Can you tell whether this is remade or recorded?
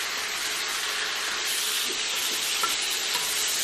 recorded